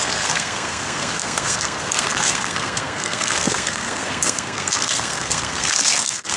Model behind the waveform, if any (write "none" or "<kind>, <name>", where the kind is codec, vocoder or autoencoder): codec, SNAC